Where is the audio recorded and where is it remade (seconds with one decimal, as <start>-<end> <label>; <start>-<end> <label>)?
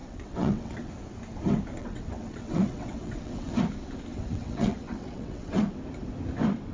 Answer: 0.0-0.9 remade; 0.9-1.8 recorded; 1.8-3.5 remade; 3.5-4.1 recorded; 4.1-5.6 remade; 5.6-6.7 recorded